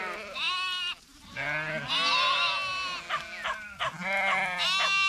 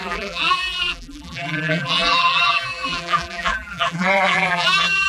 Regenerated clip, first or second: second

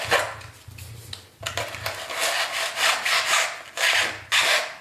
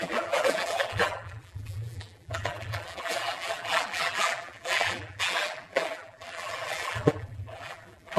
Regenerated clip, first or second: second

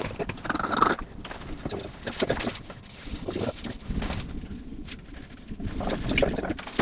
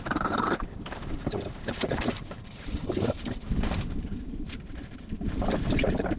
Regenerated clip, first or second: second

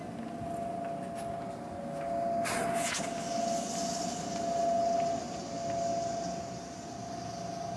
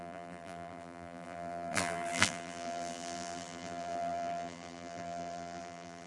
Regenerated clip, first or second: second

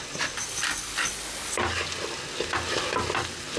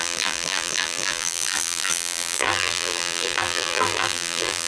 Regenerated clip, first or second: second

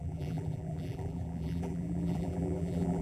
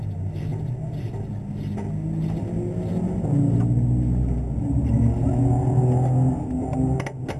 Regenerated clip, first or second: first